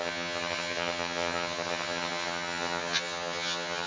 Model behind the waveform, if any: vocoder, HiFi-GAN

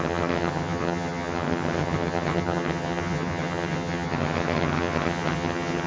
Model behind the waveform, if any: vocoder, HiFi-GAN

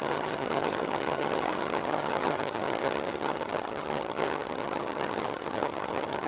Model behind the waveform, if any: vocoder, HiFi-GAN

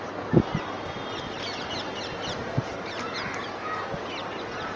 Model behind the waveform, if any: none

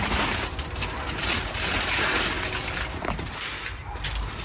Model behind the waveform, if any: none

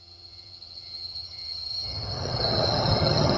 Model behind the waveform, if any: vocoder, HiFi-GAN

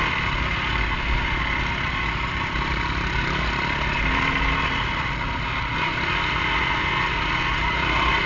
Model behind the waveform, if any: none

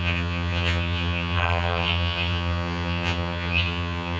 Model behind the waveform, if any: vocoder, HiFi-GAN